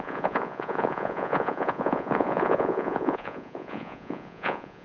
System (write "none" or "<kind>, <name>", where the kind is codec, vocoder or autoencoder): vocoder, Vocos